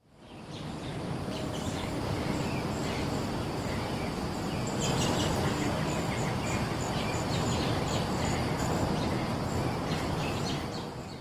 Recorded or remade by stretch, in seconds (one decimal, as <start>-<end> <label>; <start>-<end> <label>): 0.0-0.9 recorded; 0.9-1.6 remade; 1.6-11.2 recorded